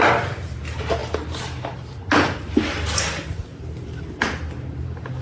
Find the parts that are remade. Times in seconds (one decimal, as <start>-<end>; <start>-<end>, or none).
none